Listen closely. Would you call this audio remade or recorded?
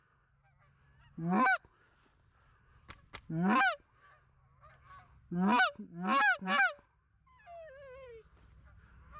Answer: recorded